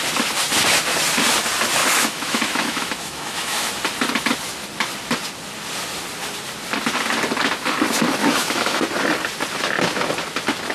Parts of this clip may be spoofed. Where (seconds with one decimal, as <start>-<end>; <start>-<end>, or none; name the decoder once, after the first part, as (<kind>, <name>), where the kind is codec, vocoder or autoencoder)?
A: 1.8-3.7 (autoencoder, DAC-VAE); 8.2-8.8